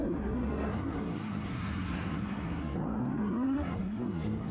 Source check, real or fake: fake